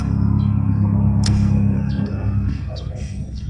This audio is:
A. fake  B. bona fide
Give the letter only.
A